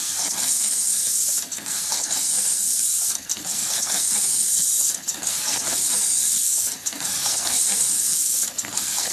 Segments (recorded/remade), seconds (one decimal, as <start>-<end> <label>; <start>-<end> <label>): 0.0-9.1 remade